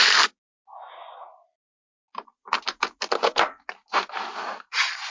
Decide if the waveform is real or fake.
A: real